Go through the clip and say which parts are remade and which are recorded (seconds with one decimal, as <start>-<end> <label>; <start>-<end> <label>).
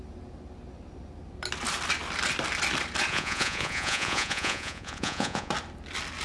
0.0-3.1 recorded; 3.1-5.5 remade; 5.5-6.2 recorded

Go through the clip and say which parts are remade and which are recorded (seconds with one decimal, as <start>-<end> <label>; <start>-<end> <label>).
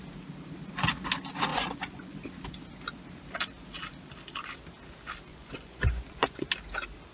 0.0-1.5 recorded; 1.5-2.2 remade; 2.2-5.3 recorded; 5.3-6.5 remade; 6.5-7.1 recorded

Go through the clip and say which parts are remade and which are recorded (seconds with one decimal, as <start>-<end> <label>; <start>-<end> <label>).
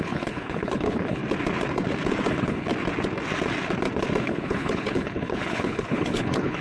0.0-1.2 remade; 1.2-2.3 recorded; 2.3-2.7 remade; 2.7-4.2 recorded; 4.2-6.6 remade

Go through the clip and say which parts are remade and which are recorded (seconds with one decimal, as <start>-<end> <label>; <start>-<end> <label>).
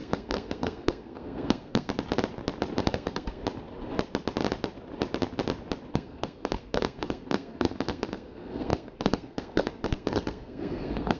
0.0-1.9 remade; 1.9-2.8 recorded; 2.8-3.4 remade; 3.4-5.9 recorded; 5.9-11.2 remade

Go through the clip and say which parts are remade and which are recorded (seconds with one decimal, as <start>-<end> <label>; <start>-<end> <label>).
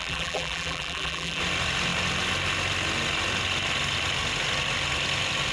0.0-1.4 remade; 1.4-5.5 recorded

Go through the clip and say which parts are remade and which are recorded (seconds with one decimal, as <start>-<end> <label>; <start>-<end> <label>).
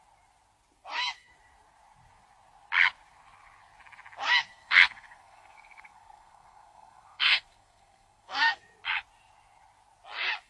0.0-4.5 recorded; 4.5-8.6 remade; 8.6-10.5 recorded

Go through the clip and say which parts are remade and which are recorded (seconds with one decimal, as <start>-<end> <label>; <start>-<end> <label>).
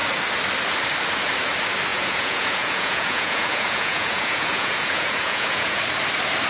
0.0-1.9 recorded; 1.9-5.8 remade; 5.8-6.5 recorded